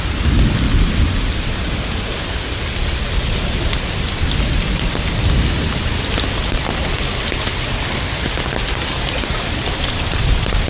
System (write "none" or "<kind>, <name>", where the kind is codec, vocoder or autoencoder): none